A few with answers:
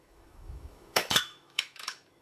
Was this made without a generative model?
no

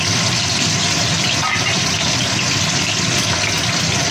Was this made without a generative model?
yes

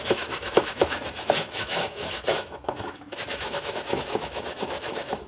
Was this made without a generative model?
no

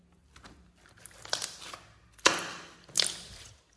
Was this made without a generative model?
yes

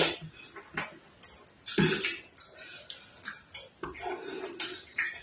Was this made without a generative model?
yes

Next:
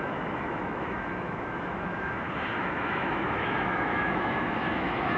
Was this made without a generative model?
no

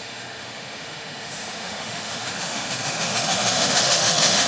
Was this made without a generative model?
no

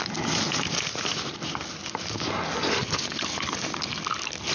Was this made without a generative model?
yes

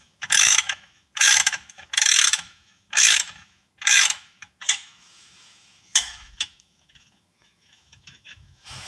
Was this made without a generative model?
no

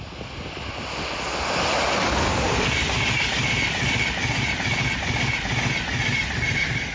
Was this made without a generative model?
yes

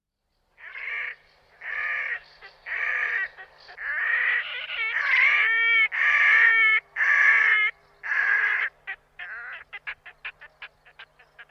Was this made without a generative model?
yes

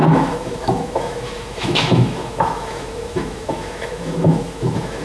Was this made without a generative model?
no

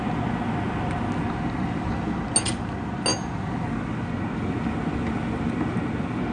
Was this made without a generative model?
yes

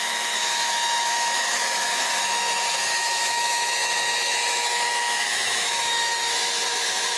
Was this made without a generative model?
no